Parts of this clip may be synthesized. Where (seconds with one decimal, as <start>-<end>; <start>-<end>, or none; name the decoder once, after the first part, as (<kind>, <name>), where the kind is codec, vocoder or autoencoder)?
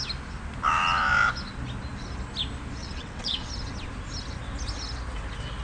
2.8-3.5 (vocoder, WaveNeXt)